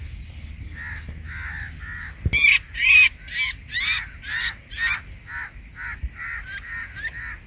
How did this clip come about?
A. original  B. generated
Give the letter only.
A